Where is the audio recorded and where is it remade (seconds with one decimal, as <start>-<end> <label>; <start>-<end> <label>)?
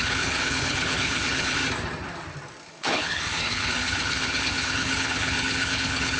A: 0.0-1.6 remade; 1.6-2.7 recorded; 2.7-6.2 remade